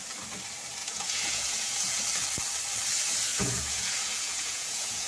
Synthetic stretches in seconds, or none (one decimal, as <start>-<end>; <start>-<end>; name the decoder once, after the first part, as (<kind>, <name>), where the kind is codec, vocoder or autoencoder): 0.8-2.0 (vocoder, Vocos); 3.3-5.1